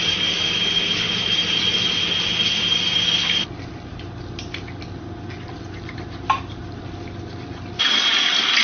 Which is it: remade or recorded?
recorded